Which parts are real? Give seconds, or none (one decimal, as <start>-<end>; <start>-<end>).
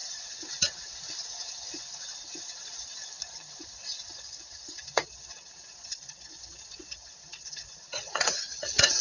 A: 3.0-3.5